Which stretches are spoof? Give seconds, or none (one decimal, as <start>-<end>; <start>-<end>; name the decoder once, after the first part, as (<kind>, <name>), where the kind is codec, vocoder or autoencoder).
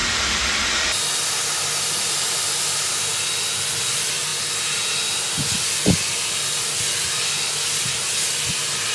none